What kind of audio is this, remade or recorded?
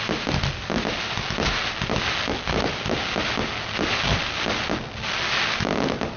recorded